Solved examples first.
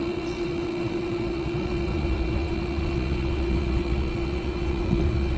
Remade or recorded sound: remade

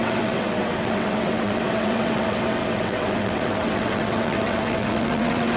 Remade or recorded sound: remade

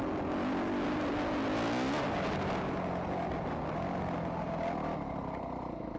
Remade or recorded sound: recorded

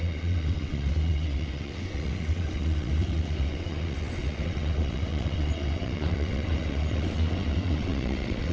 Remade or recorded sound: remade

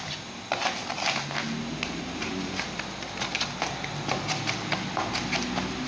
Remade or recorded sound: recorded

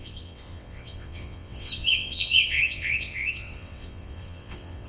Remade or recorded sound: remade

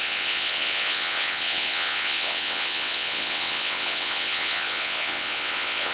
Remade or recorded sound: remade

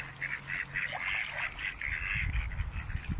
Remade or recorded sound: recorded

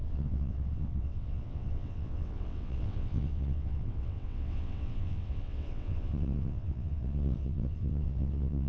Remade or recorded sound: remade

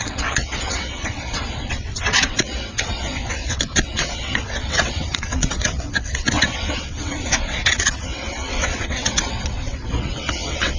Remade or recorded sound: remade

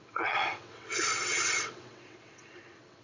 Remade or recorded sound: remade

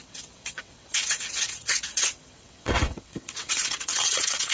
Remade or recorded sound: remade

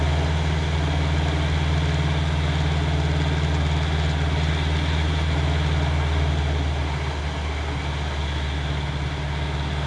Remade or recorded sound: recorded